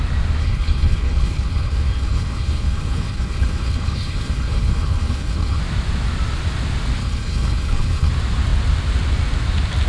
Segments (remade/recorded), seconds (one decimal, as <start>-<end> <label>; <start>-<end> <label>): 0.0-0.4 recorded; 0.4-5.6 remade; 5.6-7.0 recorded; 7.0-8.1 remade; 8.1-9.9 recorded